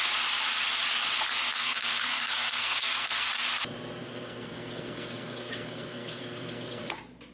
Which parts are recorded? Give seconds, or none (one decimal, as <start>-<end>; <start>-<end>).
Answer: 0.0-1.5; 3.3-4.0; 6.8-7.3